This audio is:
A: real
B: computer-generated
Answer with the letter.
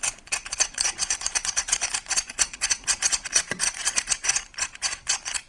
B